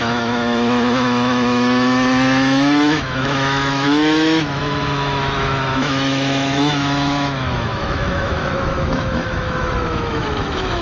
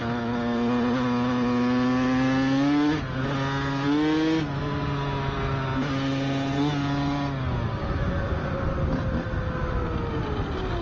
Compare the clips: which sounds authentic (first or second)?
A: second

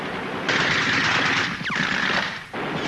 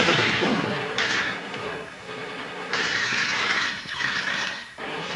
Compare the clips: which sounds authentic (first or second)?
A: first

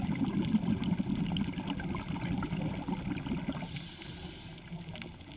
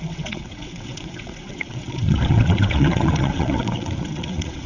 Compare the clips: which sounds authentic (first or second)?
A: first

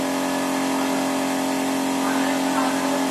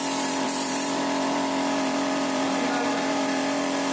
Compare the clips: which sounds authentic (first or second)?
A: first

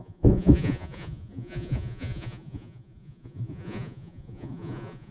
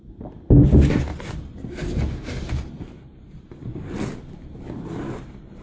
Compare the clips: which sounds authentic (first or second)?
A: second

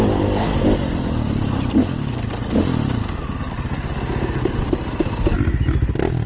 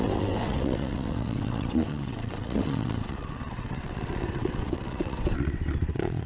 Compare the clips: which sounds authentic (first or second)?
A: first